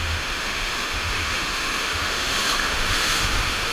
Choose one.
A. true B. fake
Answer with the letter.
B